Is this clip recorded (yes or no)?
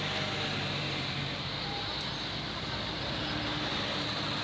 yes